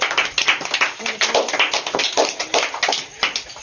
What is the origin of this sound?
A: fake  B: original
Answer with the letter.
B